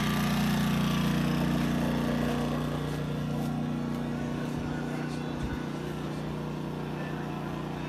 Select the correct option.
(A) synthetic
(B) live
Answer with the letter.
B